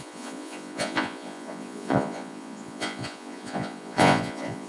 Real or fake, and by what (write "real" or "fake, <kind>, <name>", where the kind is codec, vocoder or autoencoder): fake, vocoder, Vocos